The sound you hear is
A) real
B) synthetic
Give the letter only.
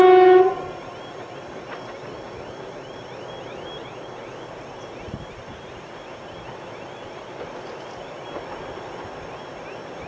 A